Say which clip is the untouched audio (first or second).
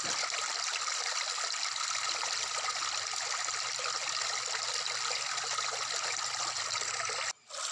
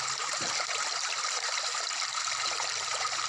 first